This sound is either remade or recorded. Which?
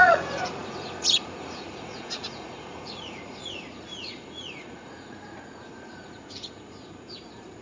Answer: remade